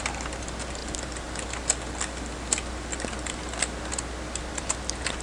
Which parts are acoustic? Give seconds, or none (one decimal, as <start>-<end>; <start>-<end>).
0.0-0.8; 3.9-5.2